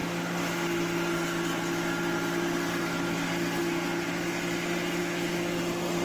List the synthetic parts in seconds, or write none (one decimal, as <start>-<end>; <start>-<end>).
5.0-5.6